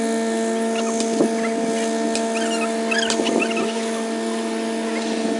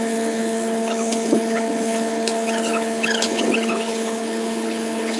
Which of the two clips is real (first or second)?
first